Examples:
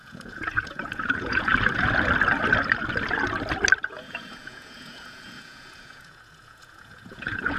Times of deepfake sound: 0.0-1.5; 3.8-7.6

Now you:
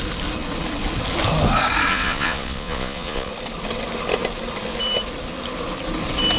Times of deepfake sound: 1.9-3.3

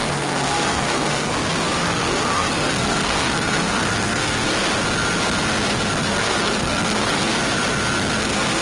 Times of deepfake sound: 0.0-1.3; 1.8-4.5; 6.0-7.3; 8.2-8.6

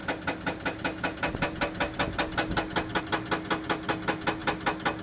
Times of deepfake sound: none

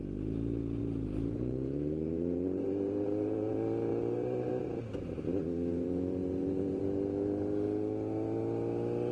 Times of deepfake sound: 0.8-3.5; 3.9-4.5; 5.7-6.8